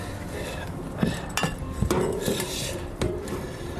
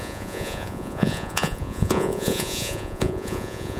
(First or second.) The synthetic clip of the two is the second